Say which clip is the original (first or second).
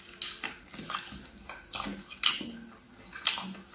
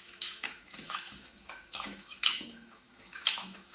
first